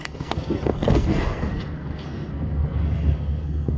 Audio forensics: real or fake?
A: fake